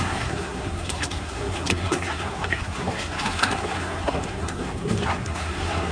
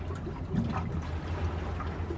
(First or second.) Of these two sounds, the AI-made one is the first